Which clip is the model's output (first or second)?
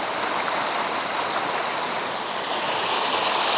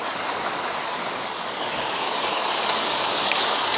second